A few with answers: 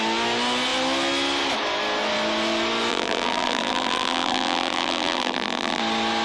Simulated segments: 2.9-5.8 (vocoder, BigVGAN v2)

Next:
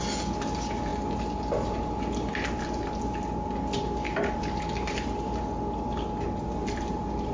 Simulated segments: none

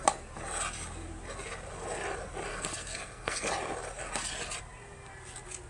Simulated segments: 2.5-3.5 (codec, SNAC)

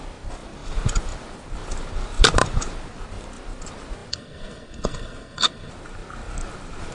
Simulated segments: 4.1-5.7 (codec, SNAC)

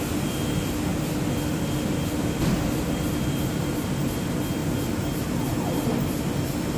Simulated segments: 0.9-3.9 (vocoder, BigVGAN v2); 4.6-5.5

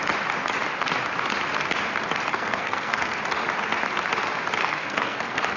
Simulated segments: 2.3-3.2 (codec, SNAC); 4.6-5.6

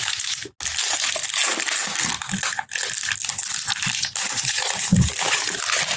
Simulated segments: 0.0-0.4 (vocoder, BigVGAN v2); 4.0-6.0